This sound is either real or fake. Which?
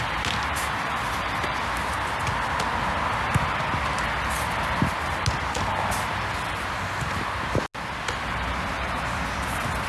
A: real